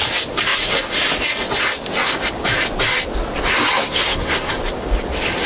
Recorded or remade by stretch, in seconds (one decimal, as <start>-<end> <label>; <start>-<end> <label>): 0.0-3.8 recorded; 3.8-4.5 remade; 4.5-5.5 recorded